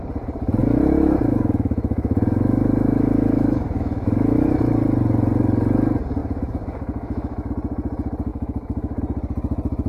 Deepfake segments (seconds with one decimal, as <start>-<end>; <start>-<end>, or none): 0.6-4.6; 6.2-7.5; 8.3-9.0